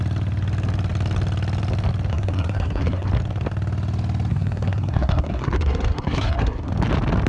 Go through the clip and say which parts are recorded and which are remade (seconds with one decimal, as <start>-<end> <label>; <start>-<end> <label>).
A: 0.0-2.1 recorded; 2.1-3.1 remade; 3.1-4.3 recorded; 4.3-6.7 remade; 6.7-7.3 recorded